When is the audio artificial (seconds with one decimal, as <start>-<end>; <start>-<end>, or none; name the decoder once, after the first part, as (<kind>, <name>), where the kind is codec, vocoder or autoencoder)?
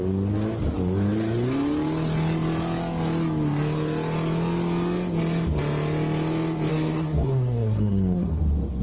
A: 6.7-8.4 (codec, SNAC)